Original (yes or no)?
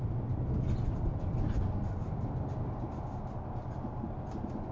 yes